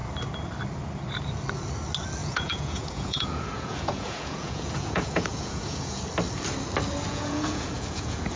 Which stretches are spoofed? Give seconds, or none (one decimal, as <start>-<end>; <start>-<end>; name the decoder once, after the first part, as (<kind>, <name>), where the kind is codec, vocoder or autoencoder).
2.2-6.0 (vocoder, Vocos); 7.1-8.4